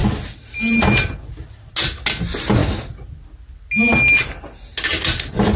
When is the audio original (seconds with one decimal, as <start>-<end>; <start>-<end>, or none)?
0.0-5.6